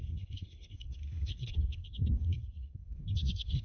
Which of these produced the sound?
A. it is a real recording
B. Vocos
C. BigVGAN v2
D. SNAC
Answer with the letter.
D